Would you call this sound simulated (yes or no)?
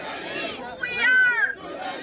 no